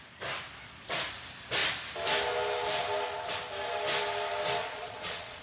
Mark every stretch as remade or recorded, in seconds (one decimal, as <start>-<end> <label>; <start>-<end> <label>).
0.0-4.6 recorded; 4.6-5.4 remade